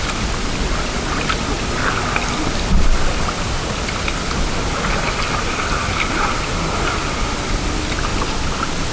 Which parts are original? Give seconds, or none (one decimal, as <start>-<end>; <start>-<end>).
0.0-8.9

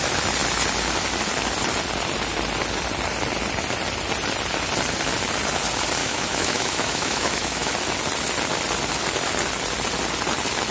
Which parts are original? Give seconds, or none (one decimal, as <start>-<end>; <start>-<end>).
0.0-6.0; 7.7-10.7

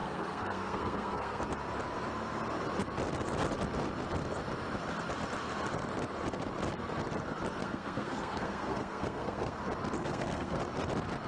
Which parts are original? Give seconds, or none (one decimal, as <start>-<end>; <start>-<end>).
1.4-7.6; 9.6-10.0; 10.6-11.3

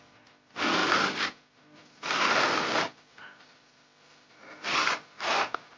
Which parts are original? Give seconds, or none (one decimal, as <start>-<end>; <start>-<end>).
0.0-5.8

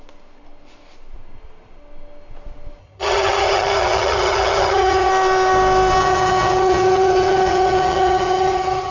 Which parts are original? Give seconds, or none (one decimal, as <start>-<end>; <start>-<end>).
0.0-2.8; 5.1-6.0